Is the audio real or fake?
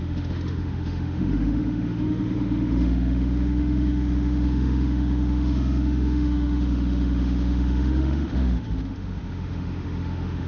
fake